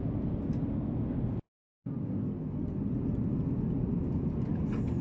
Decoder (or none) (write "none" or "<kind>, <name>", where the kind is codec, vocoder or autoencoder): none